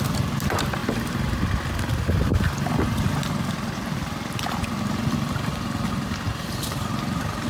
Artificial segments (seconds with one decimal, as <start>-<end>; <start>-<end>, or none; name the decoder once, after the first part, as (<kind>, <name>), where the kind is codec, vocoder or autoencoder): none